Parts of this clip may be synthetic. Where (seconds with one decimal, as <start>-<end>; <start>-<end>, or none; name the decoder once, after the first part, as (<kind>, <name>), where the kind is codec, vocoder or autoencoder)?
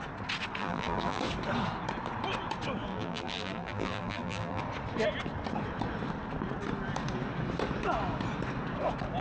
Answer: 0.6-1.2 (vocoder, BigVGAN v2); 2.9-4.6